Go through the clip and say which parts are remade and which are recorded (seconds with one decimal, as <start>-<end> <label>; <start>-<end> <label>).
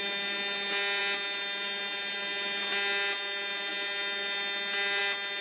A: 0.0-5.4 recorded